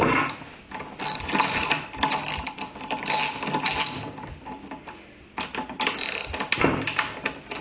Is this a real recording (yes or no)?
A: yes